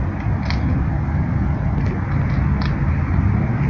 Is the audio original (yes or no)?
yes